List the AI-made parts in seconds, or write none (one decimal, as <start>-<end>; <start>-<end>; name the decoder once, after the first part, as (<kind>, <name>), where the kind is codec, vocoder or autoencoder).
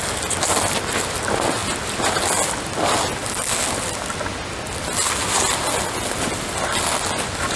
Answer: none